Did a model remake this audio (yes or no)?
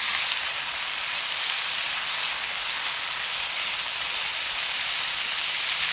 no